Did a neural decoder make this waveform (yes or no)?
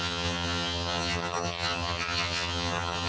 yes